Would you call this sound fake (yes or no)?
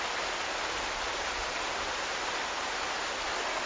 no